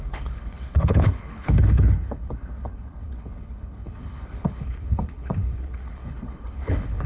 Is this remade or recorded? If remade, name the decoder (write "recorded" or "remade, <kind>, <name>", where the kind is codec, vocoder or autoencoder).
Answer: remade, codec, HILCodec